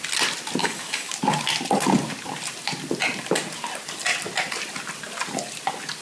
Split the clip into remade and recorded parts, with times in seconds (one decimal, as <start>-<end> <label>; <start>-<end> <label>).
0.0-0.6 recorded; 0.6-1.1 remade; 1.1-6.0 recorded